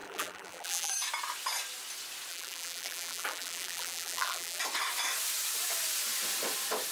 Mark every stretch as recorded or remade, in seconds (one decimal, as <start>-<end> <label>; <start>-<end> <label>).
0.0-0.9 remade; 0.9-2.3 recorded; 2.3-4.6 remade; 4.6-6.9 recorded